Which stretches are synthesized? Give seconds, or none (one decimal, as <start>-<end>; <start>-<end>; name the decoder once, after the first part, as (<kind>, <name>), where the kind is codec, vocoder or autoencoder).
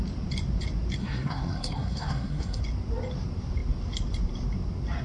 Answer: 1.0-2.6 (codec, SNAC)